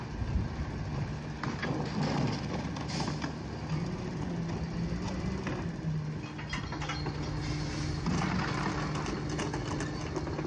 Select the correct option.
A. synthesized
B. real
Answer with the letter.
B